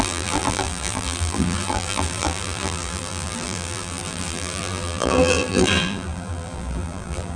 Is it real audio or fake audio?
fake